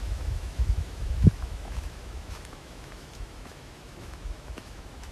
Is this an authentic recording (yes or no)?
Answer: no